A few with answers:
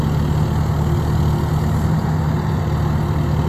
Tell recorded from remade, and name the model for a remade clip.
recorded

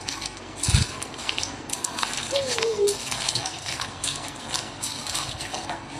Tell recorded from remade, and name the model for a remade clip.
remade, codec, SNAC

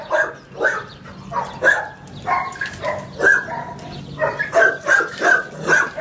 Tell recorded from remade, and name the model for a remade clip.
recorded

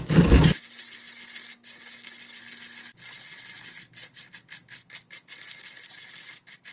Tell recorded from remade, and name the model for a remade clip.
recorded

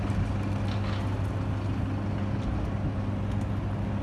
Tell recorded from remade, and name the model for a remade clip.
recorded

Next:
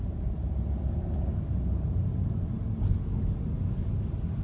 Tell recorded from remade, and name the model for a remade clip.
recorded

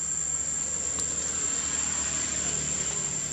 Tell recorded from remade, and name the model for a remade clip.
recorded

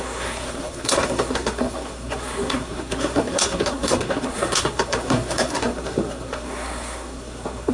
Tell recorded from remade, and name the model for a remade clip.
remade, codec, SNAC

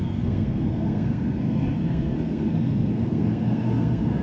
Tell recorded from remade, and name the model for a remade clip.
remade, codec, SNAC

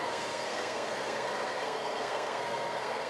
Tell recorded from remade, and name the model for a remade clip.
remade, codec, SNAC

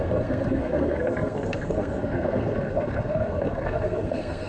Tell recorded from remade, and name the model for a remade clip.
remade, codec, SNAC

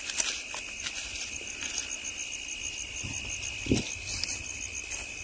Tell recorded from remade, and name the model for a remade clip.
recorded